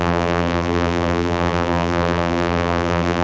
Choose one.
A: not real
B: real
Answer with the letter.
A